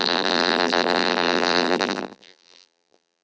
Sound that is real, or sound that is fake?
fake